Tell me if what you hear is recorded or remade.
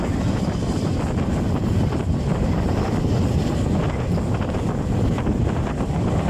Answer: recorded